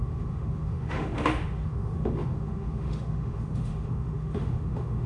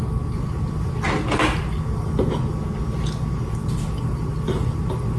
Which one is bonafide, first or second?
second